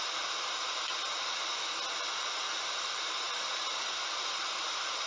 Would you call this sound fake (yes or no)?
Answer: no